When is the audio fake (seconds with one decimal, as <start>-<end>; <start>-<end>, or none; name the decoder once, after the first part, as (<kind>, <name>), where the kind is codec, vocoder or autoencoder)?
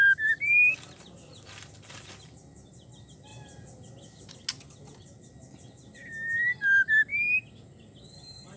none